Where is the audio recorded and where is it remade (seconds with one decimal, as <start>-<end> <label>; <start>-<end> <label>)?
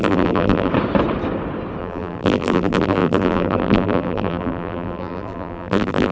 0.0-0.7 remade; 0.7-1.8 recorded; 1.8-6.1 remade